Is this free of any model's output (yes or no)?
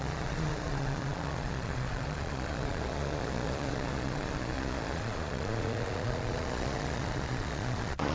no